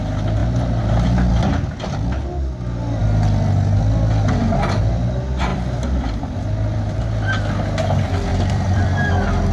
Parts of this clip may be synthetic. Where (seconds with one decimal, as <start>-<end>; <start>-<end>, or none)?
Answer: 5.5-7.0; 8.3-8.9